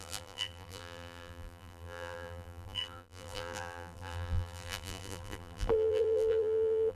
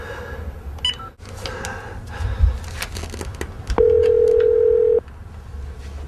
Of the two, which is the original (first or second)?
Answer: second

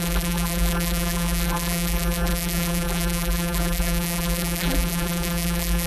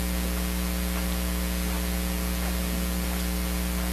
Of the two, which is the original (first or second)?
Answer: second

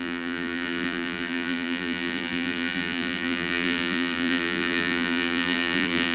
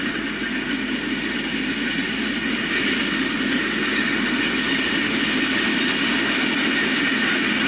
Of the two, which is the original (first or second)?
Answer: second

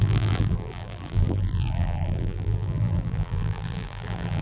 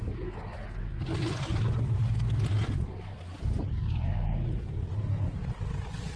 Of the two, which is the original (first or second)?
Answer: second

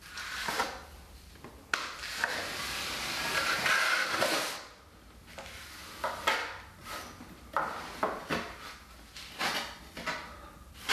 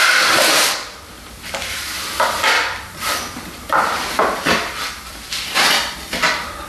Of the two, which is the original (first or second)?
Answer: first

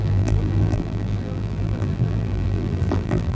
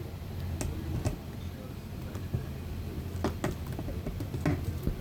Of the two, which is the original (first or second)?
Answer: second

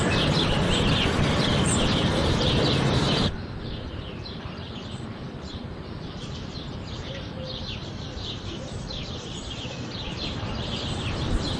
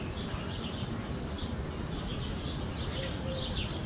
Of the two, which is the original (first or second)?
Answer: second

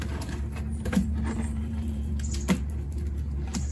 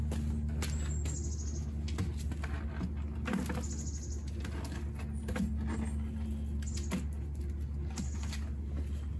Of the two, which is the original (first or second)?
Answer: second